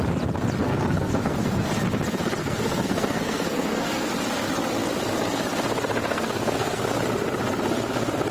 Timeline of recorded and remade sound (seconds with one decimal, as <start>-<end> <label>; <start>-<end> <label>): 0.0-0.6 recorded; 0.6-1.7 remade; 1.7-2.4 recorded; 2.4-4.1 remade; 4.1-6.0 recorded; 6.0-6.8 remade; 6.8-8.3 recorded